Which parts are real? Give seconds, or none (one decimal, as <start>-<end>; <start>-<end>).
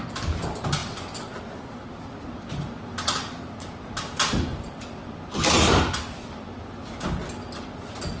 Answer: 0.0-8.2